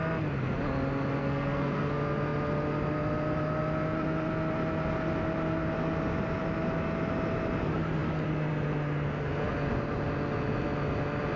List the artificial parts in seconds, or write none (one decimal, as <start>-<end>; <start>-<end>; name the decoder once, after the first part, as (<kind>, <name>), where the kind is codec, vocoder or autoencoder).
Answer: 1.2-1.9 (codec, SNAC)

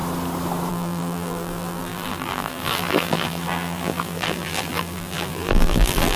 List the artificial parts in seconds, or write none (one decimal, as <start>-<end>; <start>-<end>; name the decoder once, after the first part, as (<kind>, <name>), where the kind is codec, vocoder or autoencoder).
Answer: 0.7-6.2 (vocoder, BigVGAN v2)

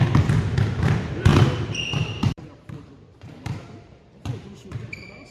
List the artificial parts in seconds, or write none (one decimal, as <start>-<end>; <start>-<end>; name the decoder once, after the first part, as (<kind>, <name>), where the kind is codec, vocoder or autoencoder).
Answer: 1.3-4.5 (vocoder, BigVGAN v2)

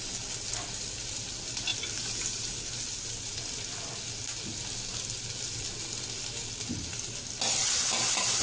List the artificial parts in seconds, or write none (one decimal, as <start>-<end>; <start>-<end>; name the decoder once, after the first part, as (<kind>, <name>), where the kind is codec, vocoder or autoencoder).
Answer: none

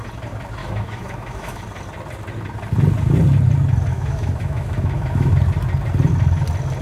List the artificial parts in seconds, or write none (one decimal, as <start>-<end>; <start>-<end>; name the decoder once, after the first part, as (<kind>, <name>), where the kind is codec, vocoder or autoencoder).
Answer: 0.6-1.6 (autoencoder, DAC-VAE); 3.9-5.3

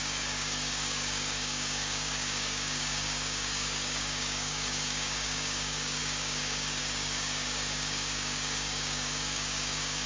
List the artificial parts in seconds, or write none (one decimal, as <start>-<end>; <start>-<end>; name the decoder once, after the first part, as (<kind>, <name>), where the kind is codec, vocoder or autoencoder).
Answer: 0.0-10.1 (codec, DAC)

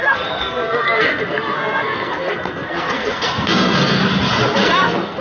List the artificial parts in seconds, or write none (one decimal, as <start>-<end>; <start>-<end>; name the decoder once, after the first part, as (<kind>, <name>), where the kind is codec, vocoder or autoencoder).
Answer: 0.0-4.0 (codec, SNAC); 4.6-5.2